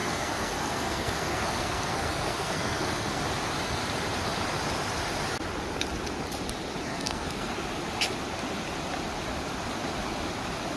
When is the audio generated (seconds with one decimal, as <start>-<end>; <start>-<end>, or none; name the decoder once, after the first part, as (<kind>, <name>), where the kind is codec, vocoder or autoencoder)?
0.0-3.2 (codec, SNAC); 6.9-7.5